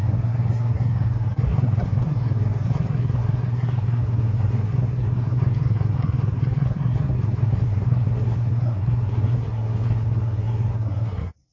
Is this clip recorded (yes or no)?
no